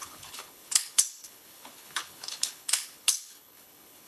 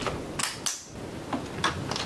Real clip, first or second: second